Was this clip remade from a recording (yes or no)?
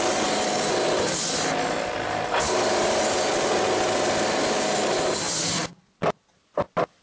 no